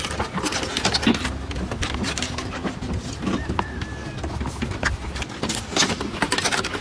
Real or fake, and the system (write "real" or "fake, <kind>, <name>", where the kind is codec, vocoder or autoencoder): real